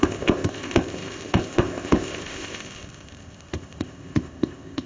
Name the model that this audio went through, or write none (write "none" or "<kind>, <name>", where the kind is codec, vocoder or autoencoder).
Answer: codec, ZipCodec